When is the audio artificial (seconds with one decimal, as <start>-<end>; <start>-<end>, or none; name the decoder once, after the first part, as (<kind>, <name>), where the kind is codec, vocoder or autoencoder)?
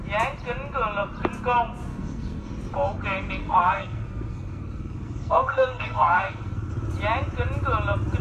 1.9-2.5 (codec, SNAC); 3.4-6.7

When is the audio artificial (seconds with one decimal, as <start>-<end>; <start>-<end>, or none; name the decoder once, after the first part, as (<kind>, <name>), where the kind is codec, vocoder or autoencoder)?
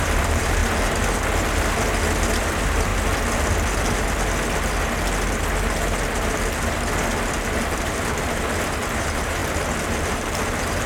0.0-0.6 (vocoder, BigVGAN v2); 2.4-2.9; 7.6-9.4; 10.1-10.9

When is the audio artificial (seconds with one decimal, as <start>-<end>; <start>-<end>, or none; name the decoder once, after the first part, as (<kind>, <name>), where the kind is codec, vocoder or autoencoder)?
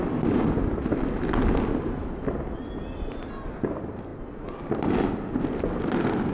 none